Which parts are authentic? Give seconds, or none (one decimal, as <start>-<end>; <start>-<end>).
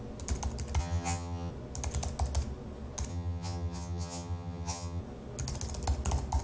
0.0-0.8; 1.5-3.1; 5.0-6.4